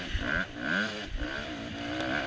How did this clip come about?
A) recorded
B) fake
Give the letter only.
A